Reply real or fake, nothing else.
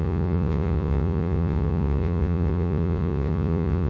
fake